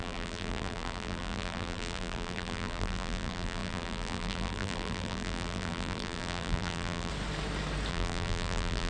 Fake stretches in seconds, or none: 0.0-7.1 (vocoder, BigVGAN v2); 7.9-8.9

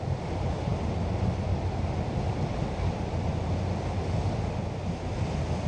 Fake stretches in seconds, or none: none

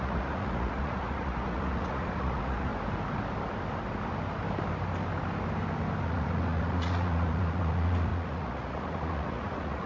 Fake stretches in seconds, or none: 0.0-2.7 (vocoder, Vocos); 6.0-9.9

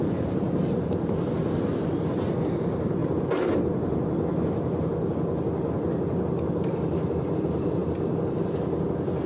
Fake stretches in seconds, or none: none

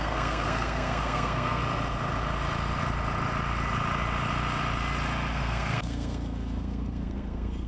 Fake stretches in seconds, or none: 0.0-1.6 (codec, SNAC); 5.3-7.7

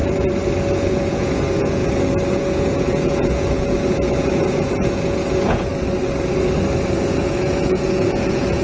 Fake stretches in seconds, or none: 0.7-1.8 (vocoder, Vocos); 2.3-5.7; 7.0-8.6

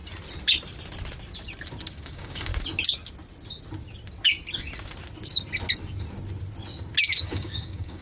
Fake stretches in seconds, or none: 1.9-2.5 (codec, DAC); 7.2-8.0